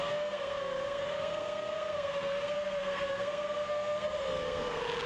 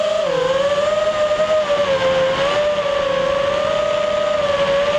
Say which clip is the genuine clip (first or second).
second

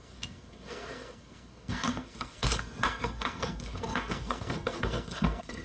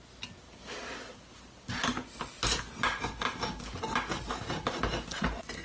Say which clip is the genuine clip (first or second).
second